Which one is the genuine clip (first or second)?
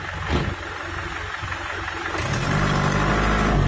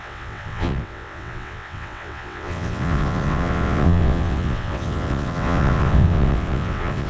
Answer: first